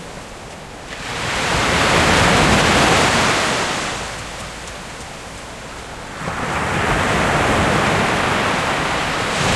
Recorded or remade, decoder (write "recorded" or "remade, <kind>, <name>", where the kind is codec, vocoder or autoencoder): recorded